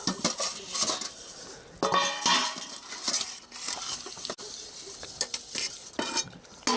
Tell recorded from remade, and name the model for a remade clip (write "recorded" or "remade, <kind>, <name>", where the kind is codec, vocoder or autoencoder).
recorded